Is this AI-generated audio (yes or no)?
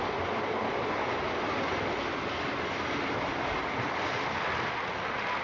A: no